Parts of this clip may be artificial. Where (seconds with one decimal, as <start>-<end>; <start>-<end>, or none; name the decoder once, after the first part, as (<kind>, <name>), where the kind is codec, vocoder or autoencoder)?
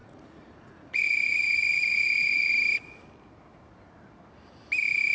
0.0-2.5 (vocoder, Vocos)